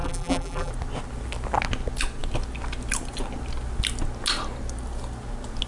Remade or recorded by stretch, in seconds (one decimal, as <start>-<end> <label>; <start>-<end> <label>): 0.0-0.7 remade; 0.7-5.7 recorded